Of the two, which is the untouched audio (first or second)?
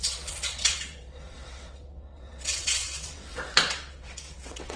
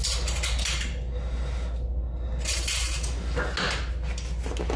second